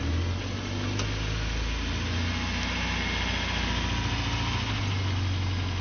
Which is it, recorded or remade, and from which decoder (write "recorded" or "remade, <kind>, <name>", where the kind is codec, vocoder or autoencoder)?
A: recorded